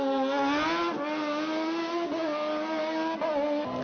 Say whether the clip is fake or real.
real